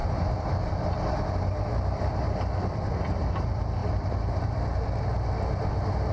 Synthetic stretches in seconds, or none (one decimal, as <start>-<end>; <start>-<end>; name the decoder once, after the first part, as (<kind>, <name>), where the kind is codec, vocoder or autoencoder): 0.0-1.1 (vocoder, BigVGAN v2); 1.7-2.9; 3.8-5.0